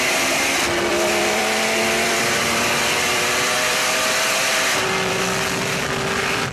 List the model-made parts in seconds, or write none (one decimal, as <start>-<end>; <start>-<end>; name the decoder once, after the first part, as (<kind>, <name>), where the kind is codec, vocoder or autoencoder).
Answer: 0.9-1.4 (vocoder, BigVGAN v2); 1.8-5.2